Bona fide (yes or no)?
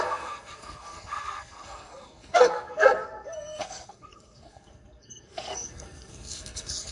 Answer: no